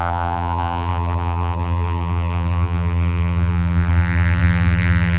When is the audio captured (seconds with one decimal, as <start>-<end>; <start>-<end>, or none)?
none